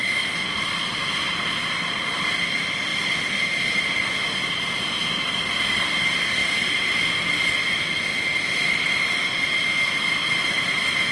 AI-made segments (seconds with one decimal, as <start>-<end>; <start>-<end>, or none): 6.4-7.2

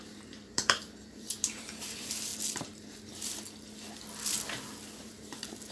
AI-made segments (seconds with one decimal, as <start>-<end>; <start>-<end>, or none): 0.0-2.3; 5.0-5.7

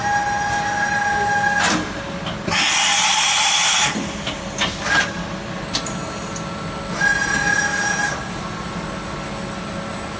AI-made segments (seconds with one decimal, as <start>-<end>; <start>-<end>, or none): 3.1-5.6; 7.7-8.4

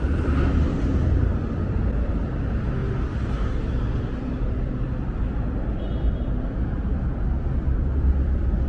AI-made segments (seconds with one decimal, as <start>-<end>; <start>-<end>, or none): none

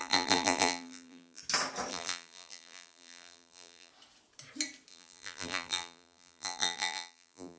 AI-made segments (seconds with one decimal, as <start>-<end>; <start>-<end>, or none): 0.0-1.4; 1.9-3.9; 4.9-7.6